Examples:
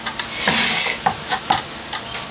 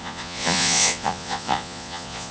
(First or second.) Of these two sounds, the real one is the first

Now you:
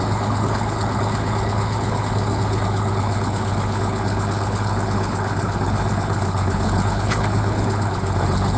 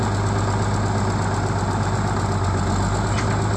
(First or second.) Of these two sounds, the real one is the second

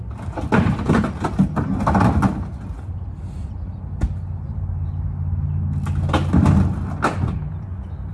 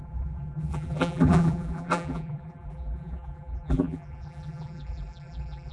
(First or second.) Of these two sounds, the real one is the first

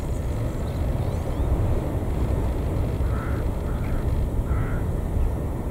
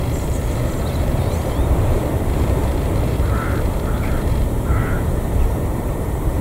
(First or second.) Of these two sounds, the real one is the first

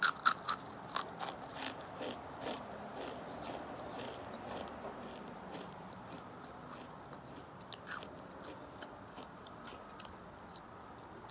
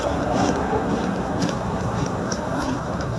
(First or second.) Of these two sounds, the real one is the first